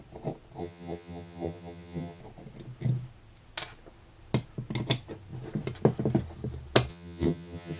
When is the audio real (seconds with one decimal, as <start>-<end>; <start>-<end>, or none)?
0.0-0.6; 2.2-6.9